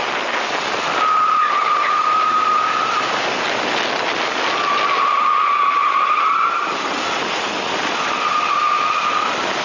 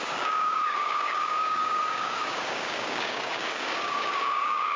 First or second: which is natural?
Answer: first